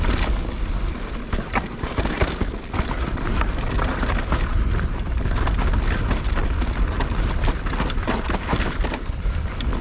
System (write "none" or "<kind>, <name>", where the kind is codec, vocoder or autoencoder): none